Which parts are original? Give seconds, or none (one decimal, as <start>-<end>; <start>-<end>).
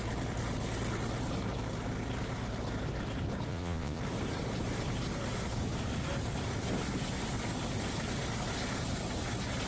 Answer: 0.0-3.5; 4.0-9.7